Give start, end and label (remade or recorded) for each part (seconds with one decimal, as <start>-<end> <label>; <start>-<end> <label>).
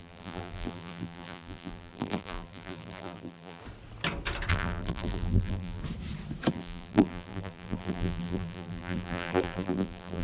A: 0.0-3.6 remade; 3.6-4.5 recorded; 4.5-5.8 remade; 5.8-6.5 recorded; 6.5-10.2 remade